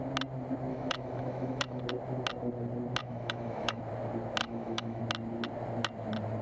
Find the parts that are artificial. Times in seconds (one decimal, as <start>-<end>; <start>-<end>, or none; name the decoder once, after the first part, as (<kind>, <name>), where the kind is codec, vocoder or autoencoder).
0.7-1.8 (autoencoder, DAC-VAE); 3.0-3.8; 4.4-5.0